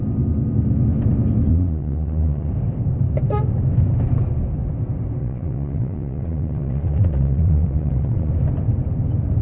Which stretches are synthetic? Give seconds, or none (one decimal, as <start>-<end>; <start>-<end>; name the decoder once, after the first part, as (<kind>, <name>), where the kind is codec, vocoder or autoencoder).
1.5-2.5 (vocoder, Vocos); 5.2-8.3

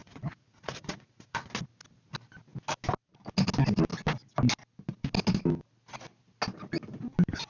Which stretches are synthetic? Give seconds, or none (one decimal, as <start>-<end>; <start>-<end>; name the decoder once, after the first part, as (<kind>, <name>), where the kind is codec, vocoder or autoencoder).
0.0-1.5 (vocoder, Vocos)

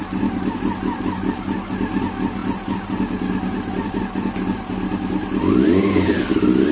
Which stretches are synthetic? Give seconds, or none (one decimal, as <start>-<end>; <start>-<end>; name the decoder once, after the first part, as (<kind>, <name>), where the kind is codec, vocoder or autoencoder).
none

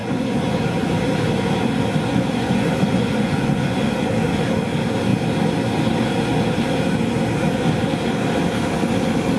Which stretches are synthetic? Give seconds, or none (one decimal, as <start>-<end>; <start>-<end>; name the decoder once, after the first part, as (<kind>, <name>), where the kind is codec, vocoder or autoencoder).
0.0-0.6 (vocoder, Vocos); 2.1-4.1

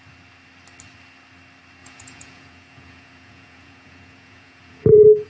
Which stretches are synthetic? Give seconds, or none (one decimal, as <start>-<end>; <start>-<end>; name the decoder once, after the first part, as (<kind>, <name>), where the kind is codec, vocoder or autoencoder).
1.8-5.3 (vocoder, Vocos)

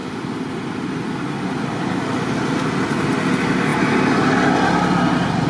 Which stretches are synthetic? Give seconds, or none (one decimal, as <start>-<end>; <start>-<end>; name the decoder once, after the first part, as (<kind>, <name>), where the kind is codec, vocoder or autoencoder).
none